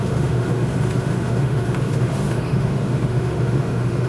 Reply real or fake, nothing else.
fake